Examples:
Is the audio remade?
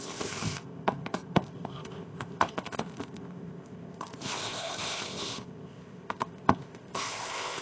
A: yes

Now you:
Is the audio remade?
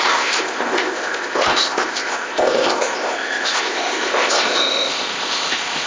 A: yes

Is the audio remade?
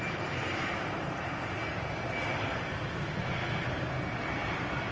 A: no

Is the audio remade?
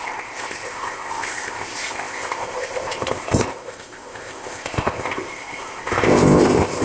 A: yes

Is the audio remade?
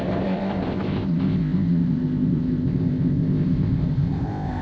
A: yes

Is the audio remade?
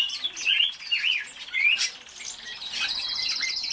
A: no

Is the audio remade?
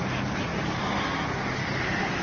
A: no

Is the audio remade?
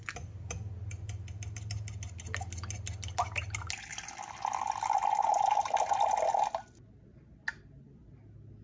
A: no